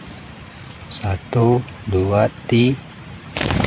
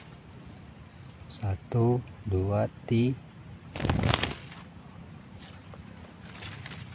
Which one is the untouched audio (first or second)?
second